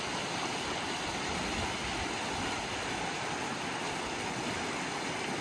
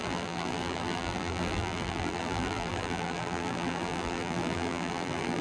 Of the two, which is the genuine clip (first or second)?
first